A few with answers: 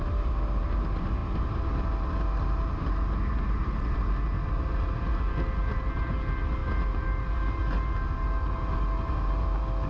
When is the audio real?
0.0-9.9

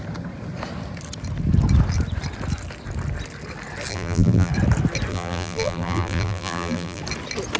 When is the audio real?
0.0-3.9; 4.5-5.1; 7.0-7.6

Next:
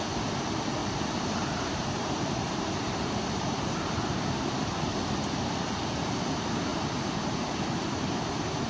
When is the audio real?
0.0-0.8; 4.0-6.7